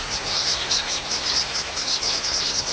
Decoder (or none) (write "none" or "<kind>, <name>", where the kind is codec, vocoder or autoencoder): codec, SNAC